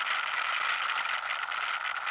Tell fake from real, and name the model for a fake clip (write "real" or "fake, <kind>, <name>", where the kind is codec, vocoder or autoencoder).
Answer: real